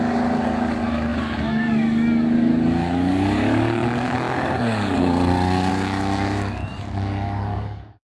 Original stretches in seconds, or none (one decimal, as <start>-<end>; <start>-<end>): none